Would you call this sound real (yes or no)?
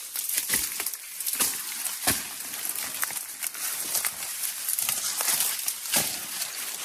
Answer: yes